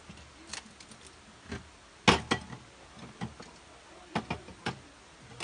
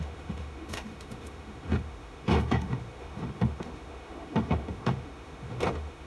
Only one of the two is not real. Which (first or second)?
second